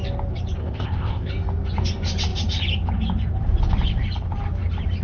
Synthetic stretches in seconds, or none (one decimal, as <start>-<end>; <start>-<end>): 0.6-1.3